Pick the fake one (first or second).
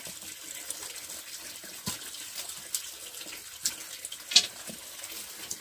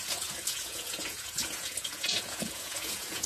second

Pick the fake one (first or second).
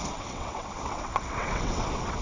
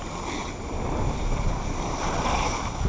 first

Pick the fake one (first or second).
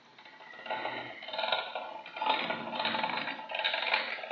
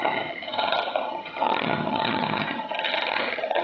second